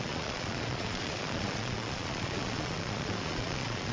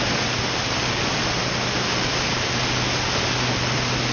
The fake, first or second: first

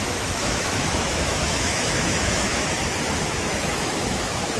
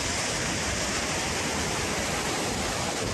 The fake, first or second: first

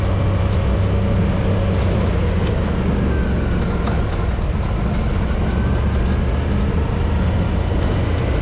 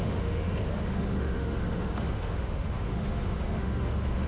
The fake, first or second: second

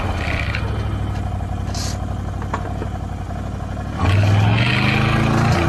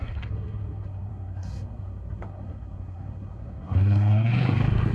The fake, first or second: second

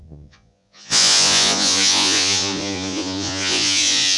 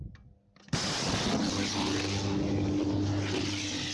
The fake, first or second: first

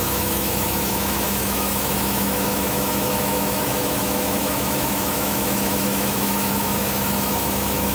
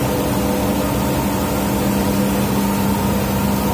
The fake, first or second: first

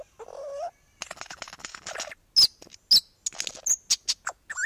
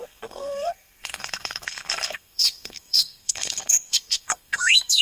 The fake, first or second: second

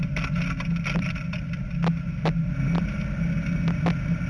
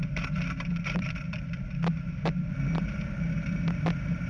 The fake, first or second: second